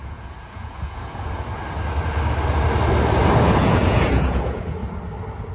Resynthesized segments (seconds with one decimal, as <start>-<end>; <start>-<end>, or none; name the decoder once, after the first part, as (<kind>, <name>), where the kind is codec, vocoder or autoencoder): 0.0-1.5 (vocoder, Vocos); 3.4-4.8